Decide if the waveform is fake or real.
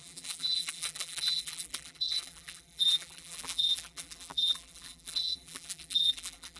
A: fake